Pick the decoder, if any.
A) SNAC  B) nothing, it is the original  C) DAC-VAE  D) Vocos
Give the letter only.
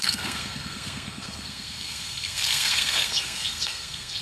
A